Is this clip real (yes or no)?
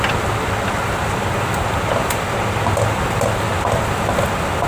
yes